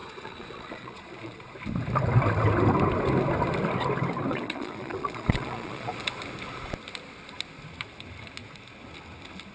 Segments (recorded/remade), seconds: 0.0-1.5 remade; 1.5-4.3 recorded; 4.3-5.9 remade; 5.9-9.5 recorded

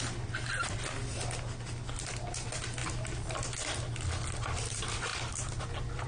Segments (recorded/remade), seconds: 0.0-6.1 recorded

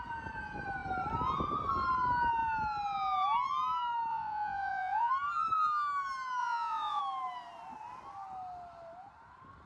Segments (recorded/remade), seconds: 0.0-4.1 recorded; 4.1-5.1 remade; 5.1-6.4 recorded; 6.4-7.0 remade; 7.0-9.7 recorded

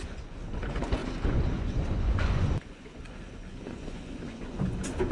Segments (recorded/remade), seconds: 0.0-5.1 remade

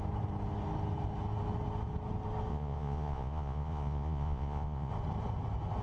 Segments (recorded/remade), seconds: 0.0-2.5 recorded; 2.5-4.9 remade; 4.9-5.8 recorded

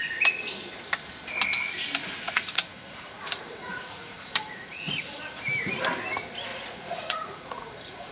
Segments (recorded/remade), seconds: 0.0-2.0 recorded; 2.0-5.2 remade; 5.2-6.5 recorded; 6.5-8.1 remade

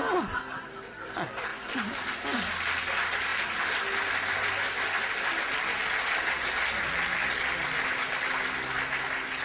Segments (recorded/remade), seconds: 0.0-9.4 recorded

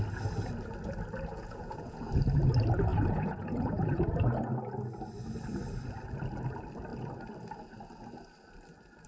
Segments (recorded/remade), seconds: 0.0-1.3 recorded; 1.3-2.1 remade; 2.1-2.9 recorded; 2.9-4.1 remade; 4.1-9.1 recorded